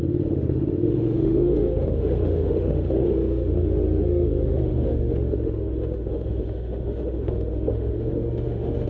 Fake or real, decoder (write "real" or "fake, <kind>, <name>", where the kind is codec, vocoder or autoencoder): fake, autoencoder, DAC-VAE